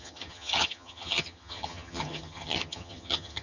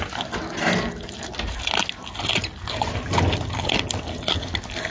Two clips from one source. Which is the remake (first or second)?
first